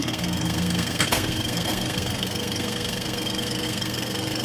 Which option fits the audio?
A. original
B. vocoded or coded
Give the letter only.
B